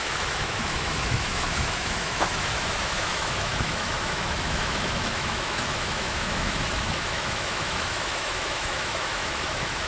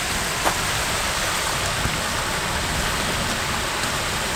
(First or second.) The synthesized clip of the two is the first